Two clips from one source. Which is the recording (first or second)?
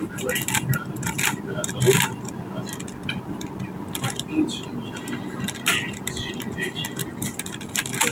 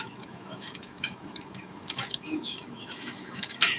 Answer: first